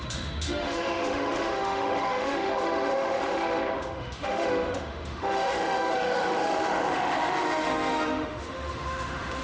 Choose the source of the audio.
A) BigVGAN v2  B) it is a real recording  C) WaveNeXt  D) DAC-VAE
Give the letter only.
D